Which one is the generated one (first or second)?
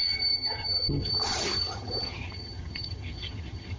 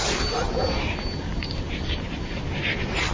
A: first